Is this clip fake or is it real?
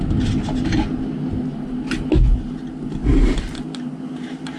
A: real